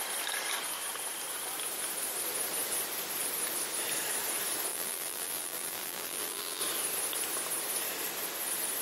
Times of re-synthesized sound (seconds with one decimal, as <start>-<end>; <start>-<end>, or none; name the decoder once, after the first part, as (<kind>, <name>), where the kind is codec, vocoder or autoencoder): 4.7-6.6 (vocoder, BigVGAN v2)